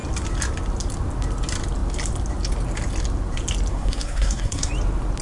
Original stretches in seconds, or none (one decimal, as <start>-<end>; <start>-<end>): 0.0-3.7; 4.7-5.2